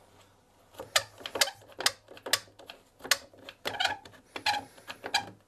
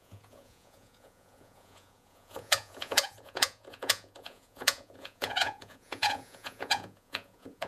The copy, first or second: second